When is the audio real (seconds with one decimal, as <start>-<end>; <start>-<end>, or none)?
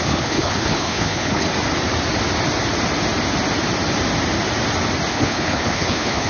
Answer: 1.5-5.1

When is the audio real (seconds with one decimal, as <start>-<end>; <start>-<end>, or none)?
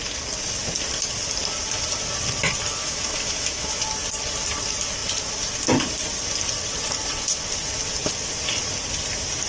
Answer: 0.0-2.8; 3.8-9.5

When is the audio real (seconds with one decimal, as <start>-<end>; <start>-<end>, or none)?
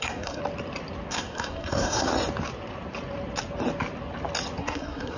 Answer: 0.4-1.1; 2.1-4.6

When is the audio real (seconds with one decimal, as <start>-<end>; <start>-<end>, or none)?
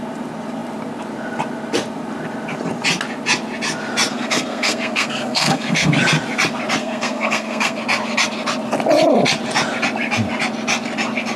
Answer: 0.0-4.1; 5.9-6.8; 7.8-11.4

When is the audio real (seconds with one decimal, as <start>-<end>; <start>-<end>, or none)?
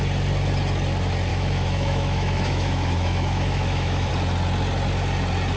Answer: 0.0-1.3; 4.1-5.6